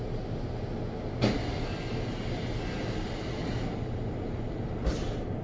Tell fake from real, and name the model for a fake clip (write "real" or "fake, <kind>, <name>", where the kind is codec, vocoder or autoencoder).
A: real